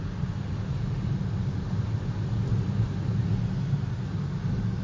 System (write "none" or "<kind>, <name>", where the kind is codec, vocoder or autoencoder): none